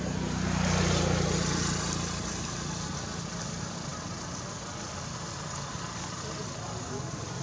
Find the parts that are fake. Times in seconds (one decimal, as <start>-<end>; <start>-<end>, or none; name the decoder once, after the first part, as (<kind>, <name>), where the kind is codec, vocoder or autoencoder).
none